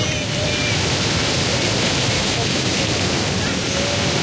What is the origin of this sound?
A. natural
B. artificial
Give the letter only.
A